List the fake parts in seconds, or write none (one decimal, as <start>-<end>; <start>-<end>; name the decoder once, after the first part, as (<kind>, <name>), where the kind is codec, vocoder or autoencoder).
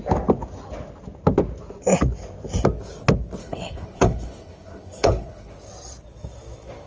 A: 3.4-5.5 (codec, HILCodec)